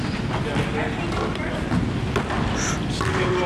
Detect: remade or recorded recorded